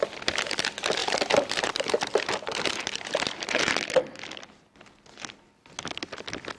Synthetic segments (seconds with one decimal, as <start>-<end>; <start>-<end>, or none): 1.0-3.7